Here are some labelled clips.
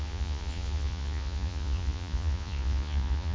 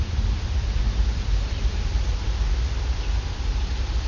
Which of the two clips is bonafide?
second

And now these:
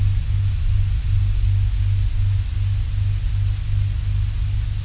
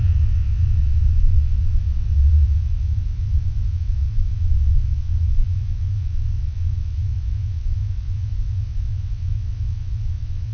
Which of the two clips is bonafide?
first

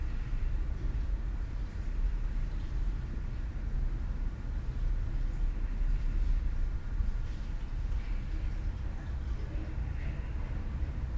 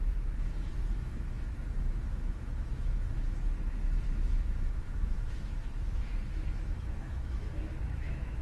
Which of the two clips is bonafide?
first